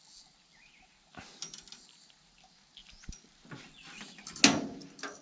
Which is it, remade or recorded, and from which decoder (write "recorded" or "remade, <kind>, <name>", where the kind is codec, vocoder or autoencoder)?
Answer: recorded